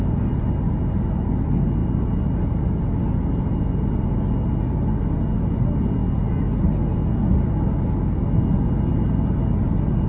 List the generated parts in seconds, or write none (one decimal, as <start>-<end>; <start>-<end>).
none